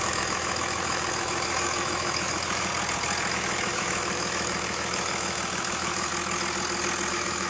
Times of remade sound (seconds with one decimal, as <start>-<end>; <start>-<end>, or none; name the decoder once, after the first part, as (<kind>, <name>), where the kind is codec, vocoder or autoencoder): 0.0-2.7 (autoencoder, DAC-VAE); 3.3-6.1; 7.1-7.5